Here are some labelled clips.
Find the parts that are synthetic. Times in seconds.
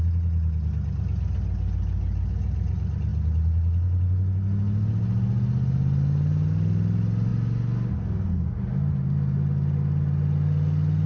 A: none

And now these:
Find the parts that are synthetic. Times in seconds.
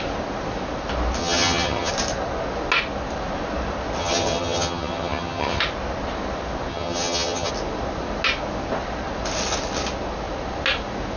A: 1.2-1.9 (vocoder, HiFi-GAN); 4.0-5.6; 6.7-7.5